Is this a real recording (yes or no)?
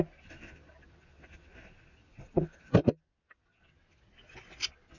yes